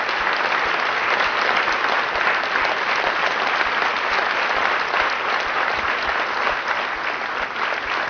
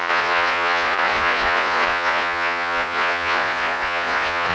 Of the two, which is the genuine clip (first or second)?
first